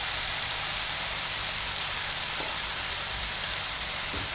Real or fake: fake